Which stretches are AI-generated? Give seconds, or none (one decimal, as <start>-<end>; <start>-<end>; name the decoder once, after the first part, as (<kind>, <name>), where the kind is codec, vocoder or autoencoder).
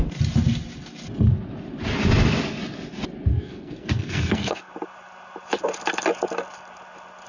3.3-4.7 (codec, SNAC)